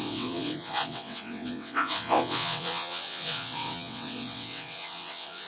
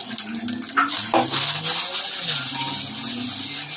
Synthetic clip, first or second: first